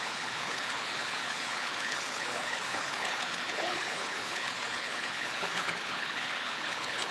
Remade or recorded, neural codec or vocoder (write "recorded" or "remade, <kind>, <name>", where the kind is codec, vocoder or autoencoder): remade, codec, HILCodec